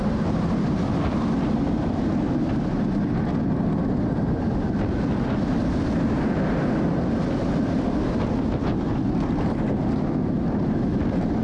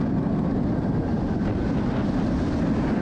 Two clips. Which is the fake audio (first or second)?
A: second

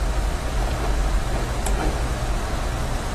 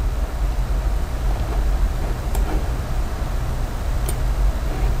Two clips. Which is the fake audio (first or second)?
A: second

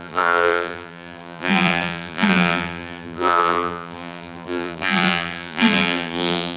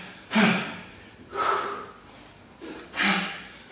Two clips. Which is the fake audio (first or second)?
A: first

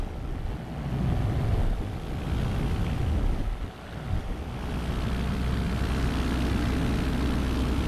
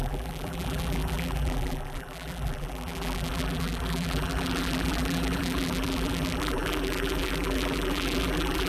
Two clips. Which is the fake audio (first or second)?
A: second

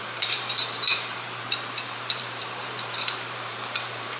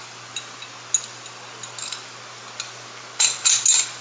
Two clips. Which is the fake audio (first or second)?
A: first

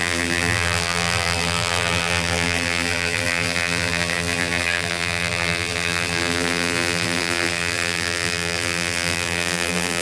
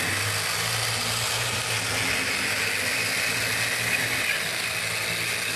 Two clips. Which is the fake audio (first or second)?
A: first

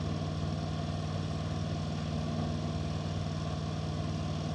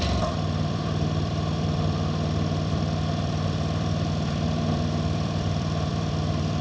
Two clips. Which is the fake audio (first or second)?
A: second